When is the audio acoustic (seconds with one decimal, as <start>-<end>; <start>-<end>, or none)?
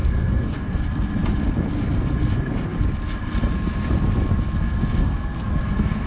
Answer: 0.8-5.0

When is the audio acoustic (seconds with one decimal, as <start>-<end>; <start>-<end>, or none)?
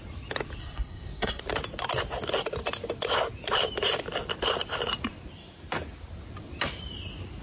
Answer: 0.0-0.6; 1.4-7.4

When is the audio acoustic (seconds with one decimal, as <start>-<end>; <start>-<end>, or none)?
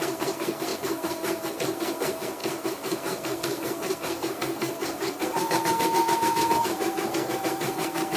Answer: none